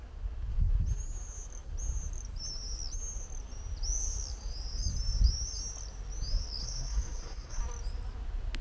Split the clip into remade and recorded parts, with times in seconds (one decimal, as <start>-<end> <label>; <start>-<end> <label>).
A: 0.0-6.6 recorded; 6.6-7.6 remade; 7.6-8.6 recorded